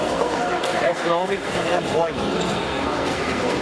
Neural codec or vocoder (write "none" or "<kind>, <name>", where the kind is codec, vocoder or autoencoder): codec, SNAC